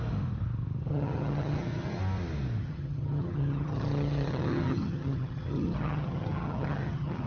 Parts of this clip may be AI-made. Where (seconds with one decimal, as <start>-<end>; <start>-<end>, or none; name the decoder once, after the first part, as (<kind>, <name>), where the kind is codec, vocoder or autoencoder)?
0.9-2.0 (vocoder, HiFi-GAN); 2.6-7.3